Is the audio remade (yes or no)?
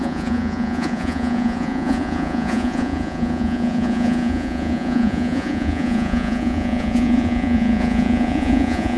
yes